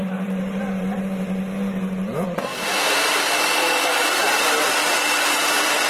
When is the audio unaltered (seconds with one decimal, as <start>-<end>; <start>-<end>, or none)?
0.8-2.5; 4.6-5.9